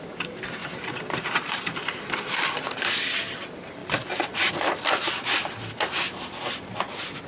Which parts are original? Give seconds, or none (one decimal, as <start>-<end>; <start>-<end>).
0.0-0.6; 2.8-3.8; 4.5-7.3